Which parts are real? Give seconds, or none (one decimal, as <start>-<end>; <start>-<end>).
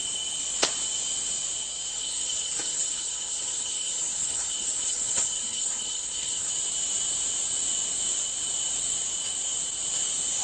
0.0-1.9; 6.5-10.4